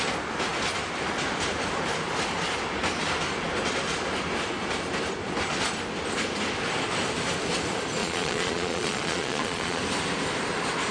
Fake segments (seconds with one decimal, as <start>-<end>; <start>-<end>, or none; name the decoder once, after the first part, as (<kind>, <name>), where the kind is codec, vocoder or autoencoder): 8.0-9.8 (vocoder, Vocos)